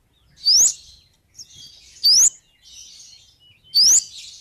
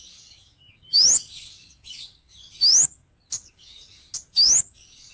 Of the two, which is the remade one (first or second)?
second